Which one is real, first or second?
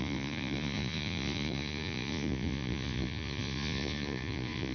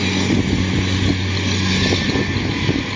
second